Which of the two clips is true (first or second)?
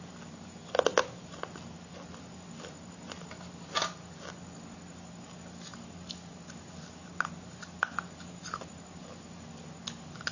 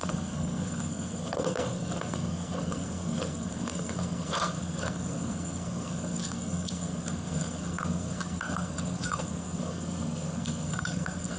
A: first